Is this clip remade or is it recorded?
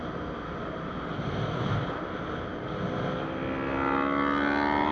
recorded